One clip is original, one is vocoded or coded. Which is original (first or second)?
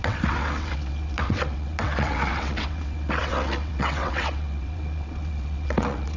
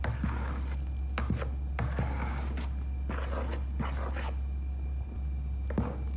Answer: second